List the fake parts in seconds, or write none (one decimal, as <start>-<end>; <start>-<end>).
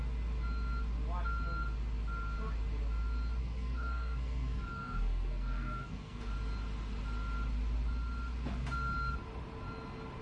3.4-6.3